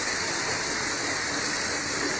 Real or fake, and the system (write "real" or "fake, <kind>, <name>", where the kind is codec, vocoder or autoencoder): real